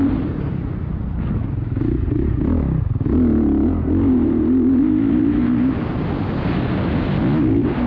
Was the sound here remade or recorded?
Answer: recorded